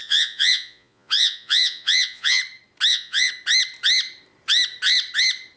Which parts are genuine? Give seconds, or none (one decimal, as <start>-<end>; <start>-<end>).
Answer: 2.4-2.9; 3.3-5.6